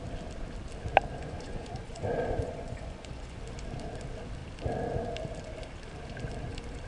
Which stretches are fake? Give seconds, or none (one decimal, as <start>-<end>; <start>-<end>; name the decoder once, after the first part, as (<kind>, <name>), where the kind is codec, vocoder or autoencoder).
1.2-3.4 (vocoder, Vocos)